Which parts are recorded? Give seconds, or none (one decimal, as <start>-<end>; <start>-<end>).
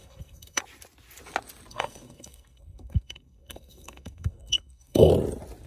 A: 0.6-1.7; 5.1-5.7